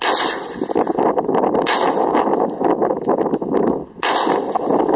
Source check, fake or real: real